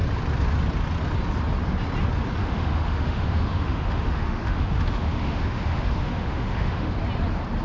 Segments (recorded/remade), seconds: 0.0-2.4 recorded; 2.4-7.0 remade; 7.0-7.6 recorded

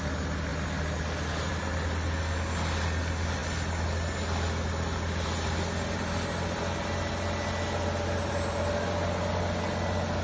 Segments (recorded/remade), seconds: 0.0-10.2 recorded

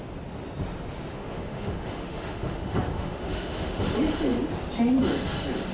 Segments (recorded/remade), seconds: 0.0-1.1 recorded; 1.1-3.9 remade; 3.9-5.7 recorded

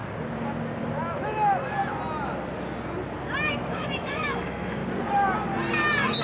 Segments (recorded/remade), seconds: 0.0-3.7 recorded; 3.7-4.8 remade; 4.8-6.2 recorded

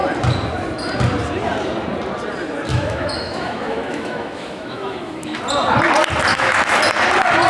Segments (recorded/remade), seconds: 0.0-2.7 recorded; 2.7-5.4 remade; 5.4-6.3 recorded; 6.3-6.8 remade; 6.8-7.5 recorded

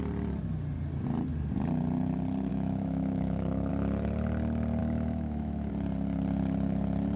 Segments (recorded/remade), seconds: 0.0-2.5 recorded; 2.5-3.7 remade; 3.7-4.8 recorded; 4.8-5.7 remade; 5.7-7.2 recorded